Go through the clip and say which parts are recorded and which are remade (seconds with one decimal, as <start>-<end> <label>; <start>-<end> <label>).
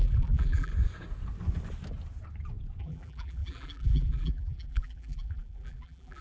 0.0-0.7 remade; 0.7-2.8 recorded; 2.8-6.2 remade